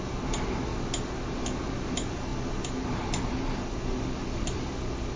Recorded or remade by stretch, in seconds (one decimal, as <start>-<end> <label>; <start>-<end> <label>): 0.0-5.2 recorded